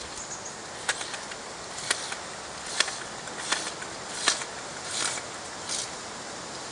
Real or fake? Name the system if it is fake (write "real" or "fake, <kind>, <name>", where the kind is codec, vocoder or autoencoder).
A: real